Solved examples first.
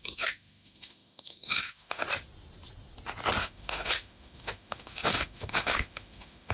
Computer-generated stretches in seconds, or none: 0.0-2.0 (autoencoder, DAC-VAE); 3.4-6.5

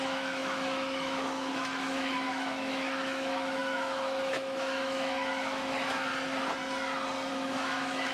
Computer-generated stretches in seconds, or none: 0.0-6.1 (autoencoder, DAC-VAE); 7.3-8.1

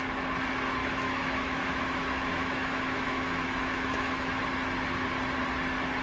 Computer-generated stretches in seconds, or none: 0.8-4.4 (autoencoder, DAC-VAE)

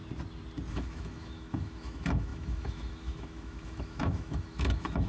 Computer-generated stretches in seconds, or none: 0.7-5.1 (autoencoder, DAC-VAE)

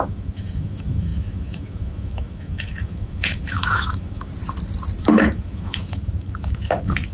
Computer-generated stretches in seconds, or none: 0.0-4.3 (autoencoder, DAC-VAE); 5.0-7.1

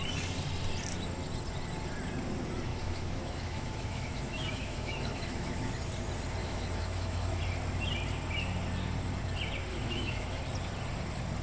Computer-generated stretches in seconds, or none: 2.7-5.7 (autoencoder, DAC-VAE); 6.4-7.4; 9.7-10.4